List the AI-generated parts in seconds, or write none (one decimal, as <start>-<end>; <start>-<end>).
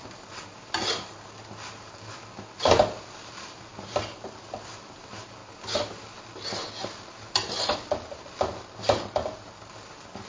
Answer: none